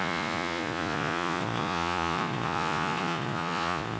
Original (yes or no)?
no